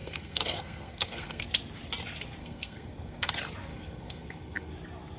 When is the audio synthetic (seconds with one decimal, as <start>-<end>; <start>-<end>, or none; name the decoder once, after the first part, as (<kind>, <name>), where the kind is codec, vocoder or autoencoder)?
0.0-1.4 (codec, SNAC); 2.4-3.3; 3.7-4.7